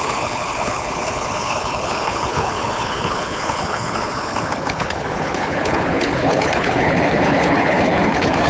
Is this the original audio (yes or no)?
no